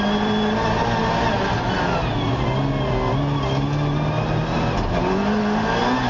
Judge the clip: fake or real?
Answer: real